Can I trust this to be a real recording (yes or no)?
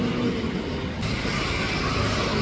yes